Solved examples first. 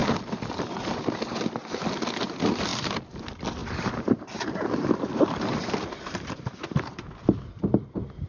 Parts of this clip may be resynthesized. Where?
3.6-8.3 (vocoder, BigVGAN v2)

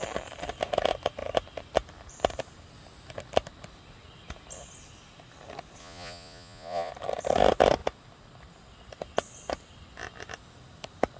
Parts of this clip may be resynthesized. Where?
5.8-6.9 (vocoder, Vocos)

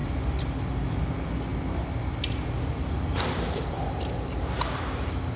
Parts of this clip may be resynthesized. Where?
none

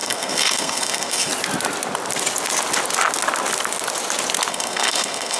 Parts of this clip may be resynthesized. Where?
0.0-1.3 (codec, SNAC); 4.5-5.4

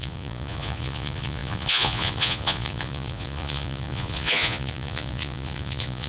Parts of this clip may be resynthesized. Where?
0.0-6.1 (vocoder, Vocos)